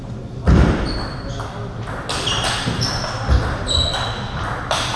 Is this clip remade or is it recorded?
recorded